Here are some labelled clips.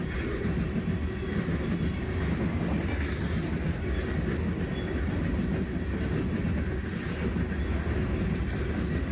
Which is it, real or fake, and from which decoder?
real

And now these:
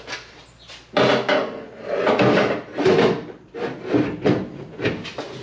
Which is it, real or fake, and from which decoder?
real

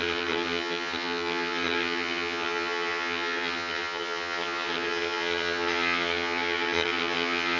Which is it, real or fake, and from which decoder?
fake, vocoder, HiFi-GAN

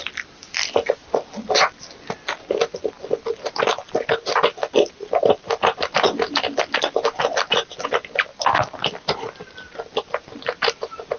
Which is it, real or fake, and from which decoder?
real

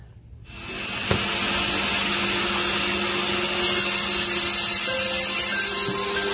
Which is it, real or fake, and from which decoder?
real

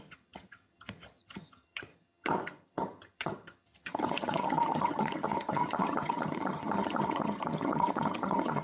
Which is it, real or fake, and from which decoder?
fake, vocoder, HiFi-GAN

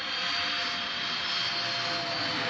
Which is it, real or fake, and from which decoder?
real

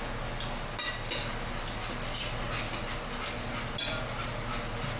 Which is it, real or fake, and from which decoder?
real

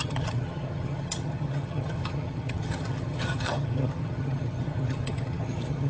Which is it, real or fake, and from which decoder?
fake, vocoder, HiFi-GAN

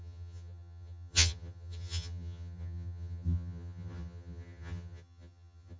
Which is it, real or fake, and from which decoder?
fake, vocoder, HiFi-GAN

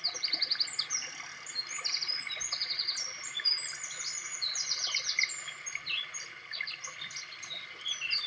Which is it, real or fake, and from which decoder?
real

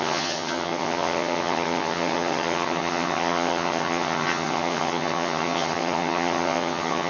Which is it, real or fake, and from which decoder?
fake, vocoder, HiFi-GAN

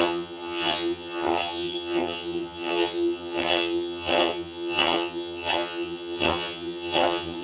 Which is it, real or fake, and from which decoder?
fake, vocoder, HiFi-GAN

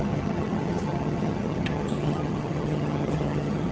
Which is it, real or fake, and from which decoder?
fake, vocoder, HiFi-GAN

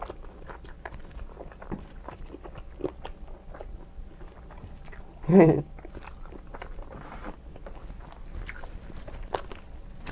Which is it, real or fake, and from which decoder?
real